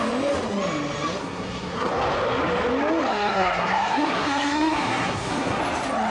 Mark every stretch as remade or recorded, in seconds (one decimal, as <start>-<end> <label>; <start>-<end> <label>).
0.0-1.2 recorded; 1.2-1.9 remade; 1.9-3.1 recorded; 3.1-5.6 remade; 5.6-6.1 recorded